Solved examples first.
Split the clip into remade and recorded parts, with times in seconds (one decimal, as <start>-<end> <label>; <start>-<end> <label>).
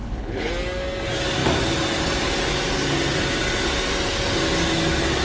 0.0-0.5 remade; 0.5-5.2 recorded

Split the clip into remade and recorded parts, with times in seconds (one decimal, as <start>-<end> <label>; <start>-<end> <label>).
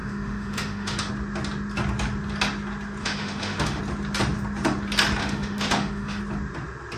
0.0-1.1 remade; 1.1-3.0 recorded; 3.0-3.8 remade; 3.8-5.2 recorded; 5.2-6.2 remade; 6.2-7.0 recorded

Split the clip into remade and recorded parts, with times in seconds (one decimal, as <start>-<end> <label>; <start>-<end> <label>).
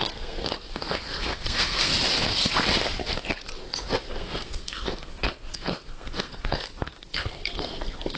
0.0-1.9 remade; 1.9-4.0 recorded; 4.0-8.2 remade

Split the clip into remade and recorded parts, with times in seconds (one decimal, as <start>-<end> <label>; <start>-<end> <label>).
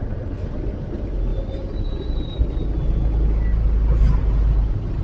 0.0-5.0 recorded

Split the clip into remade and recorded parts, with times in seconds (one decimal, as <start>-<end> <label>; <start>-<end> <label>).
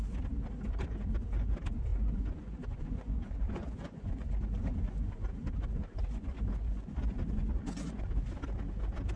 0.0-1.9 recorded; 1.9-4.3 remade; 4.3-4.7 recorded; 4.7-8.2 remade; 8.2-9.2 recorded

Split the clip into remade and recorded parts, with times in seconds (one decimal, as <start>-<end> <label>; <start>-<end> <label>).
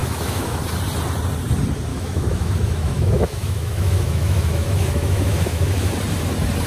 0.0-0.6 remade; 0.6-1.9 recorded; 1.9-5.9 remade; 5.9-6.7 recorded